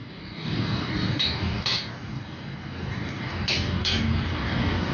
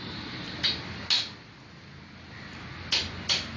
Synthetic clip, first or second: first